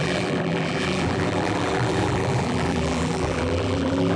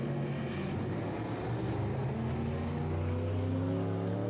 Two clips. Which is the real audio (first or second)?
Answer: second